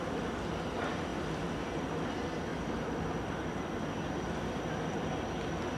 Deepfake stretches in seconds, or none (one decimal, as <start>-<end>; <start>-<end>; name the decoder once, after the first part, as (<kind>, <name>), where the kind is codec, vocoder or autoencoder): 1.1-1.8 (vocoder, BigVGAN v2); 2.5-5.1